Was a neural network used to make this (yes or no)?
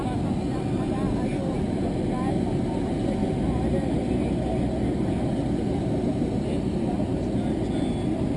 no